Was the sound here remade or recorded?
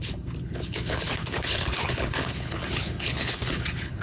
remade